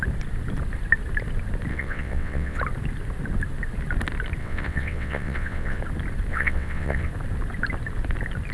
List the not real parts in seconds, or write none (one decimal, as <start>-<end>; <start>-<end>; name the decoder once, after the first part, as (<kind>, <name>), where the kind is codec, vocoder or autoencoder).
1.7-2.6 (vocoder, WaveNeXt); 4.4-5.8; 6.3-7.1

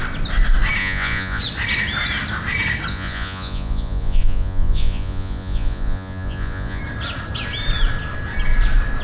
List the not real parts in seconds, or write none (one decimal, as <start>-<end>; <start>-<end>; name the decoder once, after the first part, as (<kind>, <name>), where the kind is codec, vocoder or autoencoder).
0.8-1.4 (vocoder, Vocos); 2.9-6.8

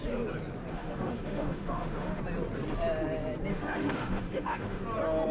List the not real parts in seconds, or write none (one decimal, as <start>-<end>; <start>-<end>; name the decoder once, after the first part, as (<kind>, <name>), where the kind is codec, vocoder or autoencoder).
0.7-2.2 (autoencoder, DAC-VAE); 3.5-4.8

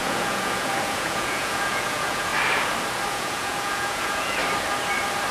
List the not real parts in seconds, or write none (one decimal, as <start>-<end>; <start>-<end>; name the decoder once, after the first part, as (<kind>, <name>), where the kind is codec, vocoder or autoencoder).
0.0-2.3 (vocoder, Vocos); 3.1-4.4

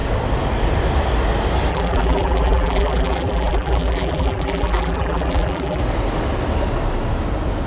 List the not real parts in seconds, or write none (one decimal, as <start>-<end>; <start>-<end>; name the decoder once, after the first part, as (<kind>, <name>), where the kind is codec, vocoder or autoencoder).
1.7-5.8 (vocoder, BigVGAN v2)

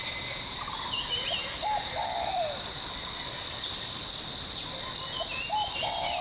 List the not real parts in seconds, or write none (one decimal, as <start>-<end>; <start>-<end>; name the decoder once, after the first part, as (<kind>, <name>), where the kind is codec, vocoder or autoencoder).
none

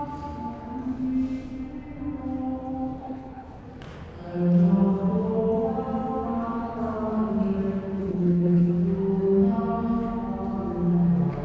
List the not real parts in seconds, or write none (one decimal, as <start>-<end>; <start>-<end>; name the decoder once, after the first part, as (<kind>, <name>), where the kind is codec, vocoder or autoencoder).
3.0-3.6 (codec, HILCodec); 8.0-8.7

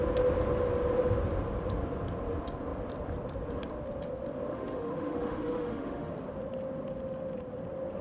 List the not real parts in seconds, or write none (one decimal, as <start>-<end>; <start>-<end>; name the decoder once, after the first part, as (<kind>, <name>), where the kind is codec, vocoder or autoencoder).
4.5-6.1 (autoencoder, DAC-VAE)